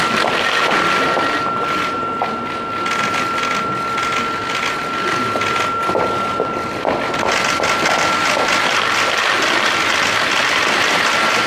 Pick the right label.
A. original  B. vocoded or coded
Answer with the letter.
A